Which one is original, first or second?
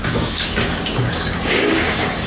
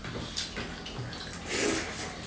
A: second